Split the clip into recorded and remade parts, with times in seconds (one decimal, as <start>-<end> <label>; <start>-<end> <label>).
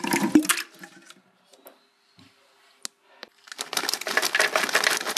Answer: 0.0-5.2 recorded